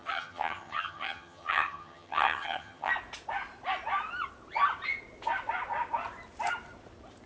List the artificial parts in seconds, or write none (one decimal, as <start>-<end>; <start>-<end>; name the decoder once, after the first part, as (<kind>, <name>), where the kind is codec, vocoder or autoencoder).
0.0-2.9 (vocoder, HiFi-GAN)